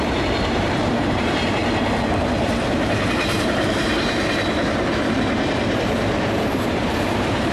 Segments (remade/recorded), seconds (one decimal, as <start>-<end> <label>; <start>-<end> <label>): 0.0-1.6 remade; 1.6-2.4 recorded; 2.4-7.5 remade